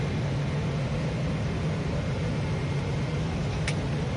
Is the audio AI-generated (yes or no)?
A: no